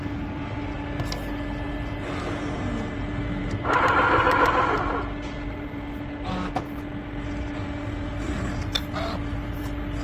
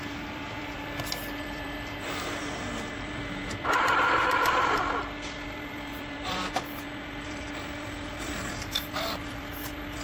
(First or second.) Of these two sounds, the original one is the first